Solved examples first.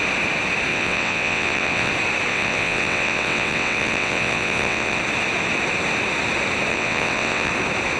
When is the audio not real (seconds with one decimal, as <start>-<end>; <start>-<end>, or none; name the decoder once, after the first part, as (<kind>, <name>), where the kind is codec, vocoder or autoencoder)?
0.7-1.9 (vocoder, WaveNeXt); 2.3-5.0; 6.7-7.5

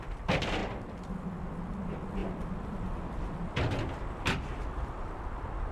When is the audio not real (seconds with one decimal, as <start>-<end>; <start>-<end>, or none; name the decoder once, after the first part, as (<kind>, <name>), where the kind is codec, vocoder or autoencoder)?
2.2-3.7 (vocoder, BigVGAN v2)

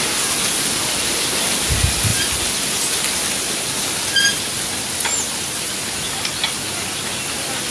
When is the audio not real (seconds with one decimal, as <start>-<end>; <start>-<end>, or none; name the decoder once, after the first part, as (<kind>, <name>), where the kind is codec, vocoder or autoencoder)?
none

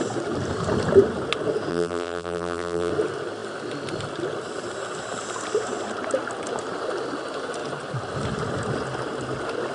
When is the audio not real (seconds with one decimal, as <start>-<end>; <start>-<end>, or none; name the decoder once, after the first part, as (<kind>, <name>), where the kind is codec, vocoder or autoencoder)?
1.7-2.9 (vocoder, BigVGAN v2)

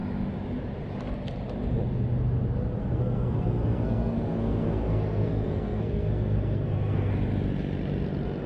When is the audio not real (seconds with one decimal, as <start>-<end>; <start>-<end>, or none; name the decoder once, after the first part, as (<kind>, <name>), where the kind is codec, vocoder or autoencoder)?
2.8-7.1 (codec, SNAC)